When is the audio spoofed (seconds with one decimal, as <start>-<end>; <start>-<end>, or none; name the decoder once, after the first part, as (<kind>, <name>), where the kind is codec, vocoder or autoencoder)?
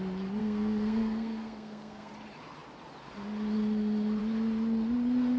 0.4-2.1 (codec, SNAC)